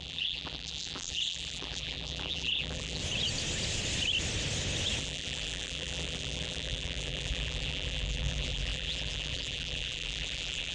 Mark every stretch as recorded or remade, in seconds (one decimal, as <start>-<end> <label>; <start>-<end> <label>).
0.0-3.0 remade; 3.0-5.0 recorded; 5.0-10.7 remade